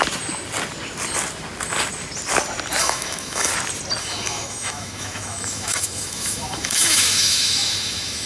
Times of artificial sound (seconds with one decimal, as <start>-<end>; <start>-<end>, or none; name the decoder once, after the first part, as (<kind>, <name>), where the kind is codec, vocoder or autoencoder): 2.8-3.5 (autoencoder, DAC-VAE); 4.0-8.3